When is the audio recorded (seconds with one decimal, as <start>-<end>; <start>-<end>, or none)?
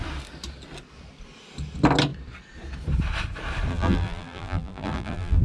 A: 0.0-3.7